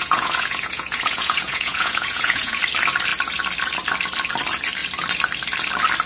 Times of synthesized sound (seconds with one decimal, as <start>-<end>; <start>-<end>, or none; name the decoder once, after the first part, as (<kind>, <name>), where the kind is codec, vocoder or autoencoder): 0.0-2.6 (vocoder, Vocos)